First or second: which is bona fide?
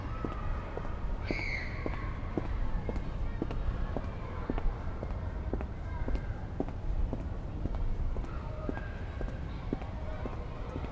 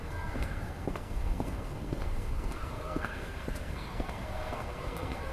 first